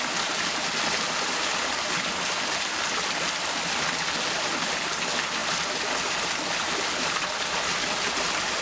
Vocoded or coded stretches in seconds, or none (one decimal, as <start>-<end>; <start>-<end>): none